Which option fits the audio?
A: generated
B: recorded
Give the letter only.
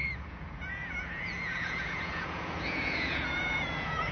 A